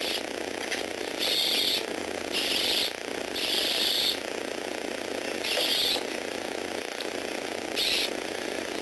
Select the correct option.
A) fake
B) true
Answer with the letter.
B